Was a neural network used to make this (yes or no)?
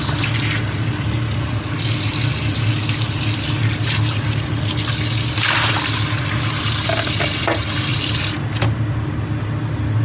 no